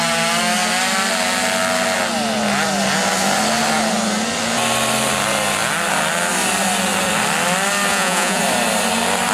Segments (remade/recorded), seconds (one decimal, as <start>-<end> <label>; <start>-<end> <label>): 0.0-7.9 recorded; 7.9-8.4 remade; 8.4-9.3 recorded

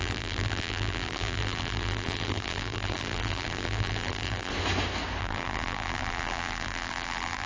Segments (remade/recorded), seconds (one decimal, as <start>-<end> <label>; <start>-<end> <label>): 0.0-4.5 remade; 4.5-5.2 recorded; 5.2-7.5 remade

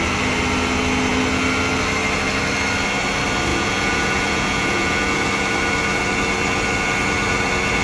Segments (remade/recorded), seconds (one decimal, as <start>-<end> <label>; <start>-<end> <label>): 0.0-3.5 recorded; 3.5-5.3 remade; 5.3-7.8 recorded

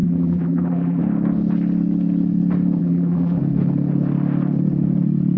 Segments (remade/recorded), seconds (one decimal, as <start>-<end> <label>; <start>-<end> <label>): 0.0-1.0 remade; 1.0-2.8 recorded; 2.8-3.4 remade; 3.4-5.4 recorded

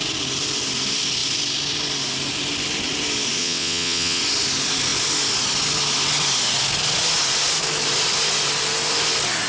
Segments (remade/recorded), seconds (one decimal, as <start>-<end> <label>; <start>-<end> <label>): 0.0-3.4 recorded; 3.4-4.2 remade; 4.2-9.5 recorded

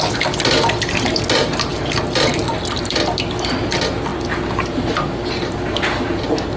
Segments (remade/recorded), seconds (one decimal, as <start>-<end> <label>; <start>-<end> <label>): 0.0-6.6 recorded